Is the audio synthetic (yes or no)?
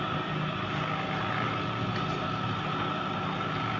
no